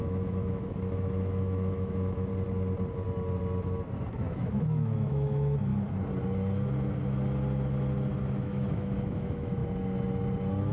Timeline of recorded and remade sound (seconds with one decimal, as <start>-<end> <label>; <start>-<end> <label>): 0.0-2.3 remade; 2.3-4.1 recorded; 4.1-5.7 remade; 5.7-8.4 recorded; 8.4-9.6 remade; 9.6-10.7 recorded